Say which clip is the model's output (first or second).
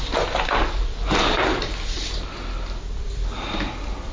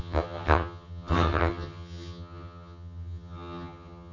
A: second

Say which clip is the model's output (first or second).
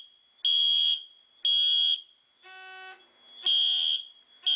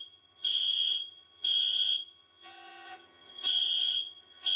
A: second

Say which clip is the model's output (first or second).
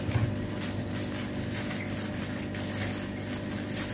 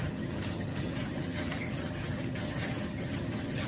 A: second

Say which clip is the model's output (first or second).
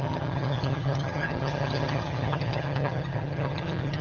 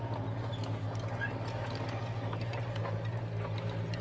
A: first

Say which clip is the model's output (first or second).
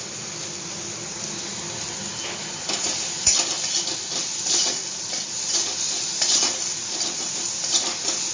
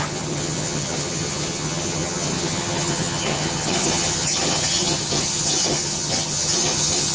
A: second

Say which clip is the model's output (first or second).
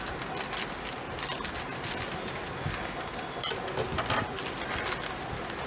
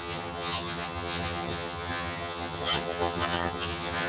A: second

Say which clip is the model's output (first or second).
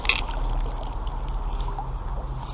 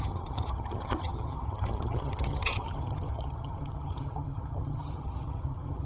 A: second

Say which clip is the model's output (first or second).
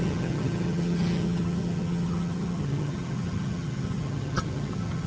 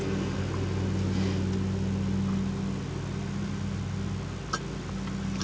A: first